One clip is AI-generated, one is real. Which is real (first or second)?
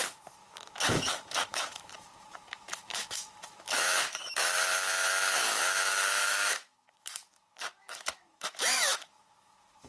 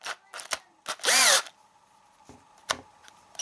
second